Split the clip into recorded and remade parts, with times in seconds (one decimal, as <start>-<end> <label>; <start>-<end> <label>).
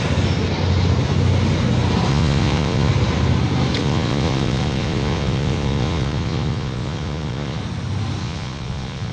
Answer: 0.0-2.1 recorded; 2.1-2.9 remade; 2.9-3.8 recorded; 3.8-7.6 remade; 7.6-8.2 recorded; 8.2-9.1 remade